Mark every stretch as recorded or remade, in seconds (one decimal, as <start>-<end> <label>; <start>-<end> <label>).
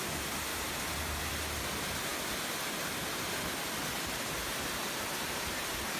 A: 0.0-0.5 recorded; 0.5-1.3 remade; 1.3-2.1 recorded; 2.1-5.4 remade; 5.4-6.0 recorded